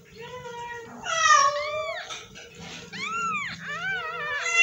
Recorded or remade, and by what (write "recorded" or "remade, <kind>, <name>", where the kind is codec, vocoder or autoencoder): recorded